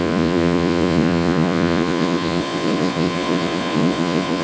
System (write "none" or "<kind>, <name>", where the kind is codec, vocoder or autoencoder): vocoder, Vocos